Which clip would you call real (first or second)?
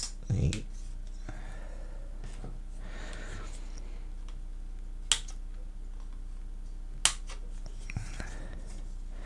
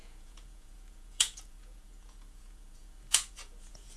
first